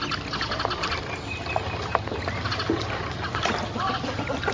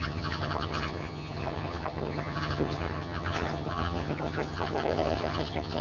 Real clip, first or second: first